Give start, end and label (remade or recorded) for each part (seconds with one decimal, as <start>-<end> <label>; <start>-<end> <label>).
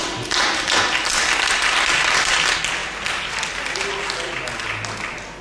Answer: 0.0-5.4 recorded